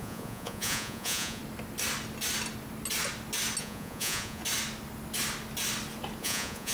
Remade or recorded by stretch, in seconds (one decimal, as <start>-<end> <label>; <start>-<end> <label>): 0.0-1.4 remade; 1.4-3.6 recorded; 3.6-4.4 remade; 4.4-6.2 recorded; 6.2-6.7 remade